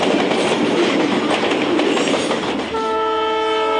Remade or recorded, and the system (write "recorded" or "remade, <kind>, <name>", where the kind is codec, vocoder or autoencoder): recorded